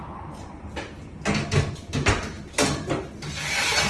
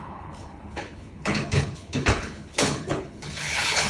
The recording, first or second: first